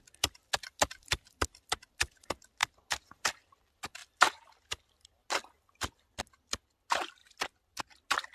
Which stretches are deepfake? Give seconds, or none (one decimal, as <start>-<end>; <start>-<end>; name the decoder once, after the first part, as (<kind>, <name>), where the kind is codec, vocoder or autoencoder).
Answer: none